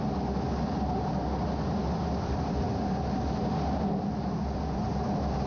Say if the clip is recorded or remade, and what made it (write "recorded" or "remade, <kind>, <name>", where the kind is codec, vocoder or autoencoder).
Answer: recorded